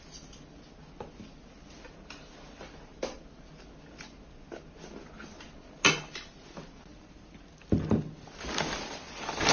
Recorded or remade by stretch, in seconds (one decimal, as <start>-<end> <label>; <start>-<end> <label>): 0.0-9.5 recorded